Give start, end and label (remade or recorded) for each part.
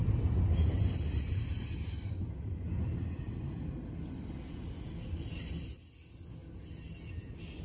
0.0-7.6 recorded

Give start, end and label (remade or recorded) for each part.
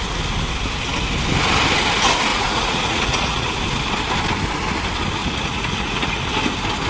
0.0-2.3 recorded; 2.3-3.5 remade; 3.5-5.2 recorded; 5.2-6.2 remade; 6.2-6.9 recorded